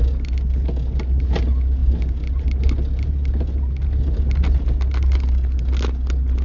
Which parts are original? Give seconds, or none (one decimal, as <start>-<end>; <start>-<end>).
0.0-6.4